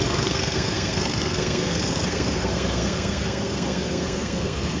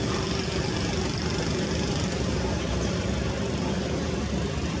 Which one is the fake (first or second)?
first